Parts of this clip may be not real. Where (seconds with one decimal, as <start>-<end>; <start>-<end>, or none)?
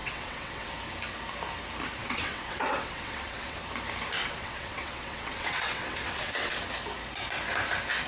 0.0-0.7; 2.0-3.6; 4.2-6.5